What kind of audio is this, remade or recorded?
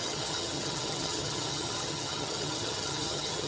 remade